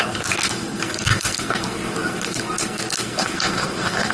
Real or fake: fake